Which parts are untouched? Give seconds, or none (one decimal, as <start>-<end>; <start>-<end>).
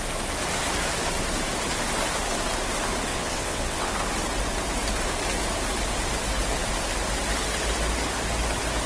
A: 0.0-3.1; 3.9-8.9